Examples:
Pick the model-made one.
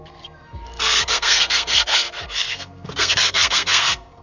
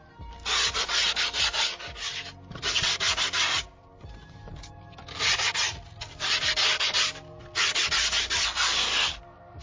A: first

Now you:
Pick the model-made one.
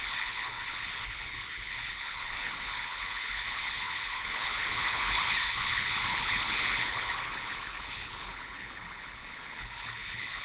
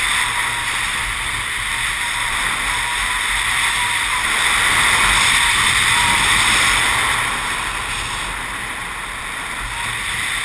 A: first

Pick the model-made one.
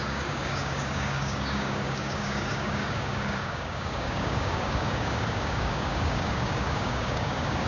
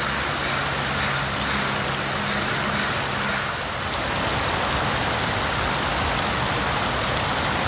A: first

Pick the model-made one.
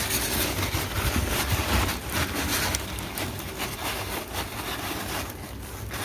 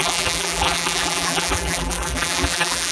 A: second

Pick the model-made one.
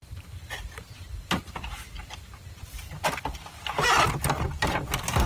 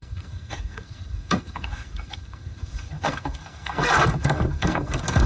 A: second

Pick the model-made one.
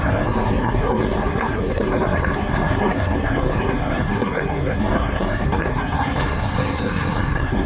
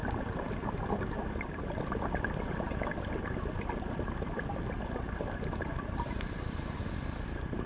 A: first